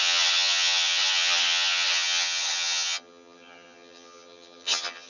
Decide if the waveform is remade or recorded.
remade